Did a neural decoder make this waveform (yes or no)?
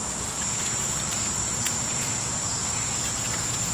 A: yes